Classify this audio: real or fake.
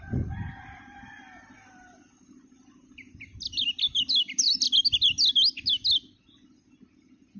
real